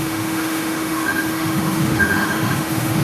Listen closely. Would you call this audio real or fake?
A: fake